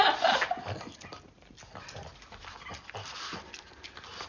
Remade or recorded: recorded